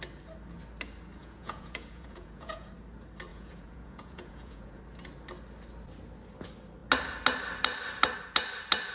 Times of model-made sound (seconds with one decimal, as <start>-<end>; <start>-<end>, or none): 1.2-2.7; 3.3-4.8